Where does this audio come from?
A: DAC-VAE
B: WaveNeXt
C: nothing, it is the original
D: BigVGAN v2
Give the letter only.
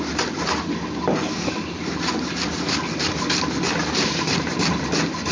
C